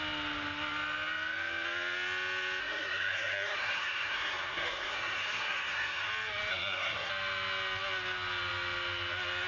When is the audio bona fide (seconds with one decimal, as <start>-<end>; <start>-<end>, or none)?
0.0-2.6; 6.1-6.5; 7.1-9.5